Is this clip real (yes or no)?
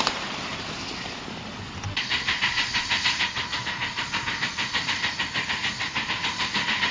yes